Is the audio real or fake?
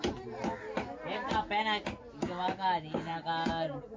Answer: real